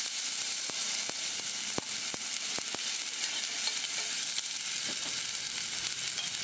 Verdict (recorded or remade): recorded